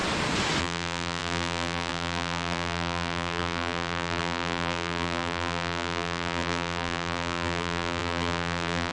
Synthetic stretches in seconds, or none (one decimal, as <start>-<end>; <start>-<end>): 0.6-8.9